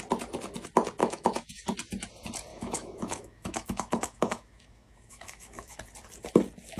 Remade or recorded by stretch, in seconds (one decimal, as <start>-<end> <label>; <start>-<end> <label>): 0.0-1.0 recorded; 1.0-1.6 remade; 1.6-2.5 recorded; 2.5-5.8 remade; 5.8-6.8 recorded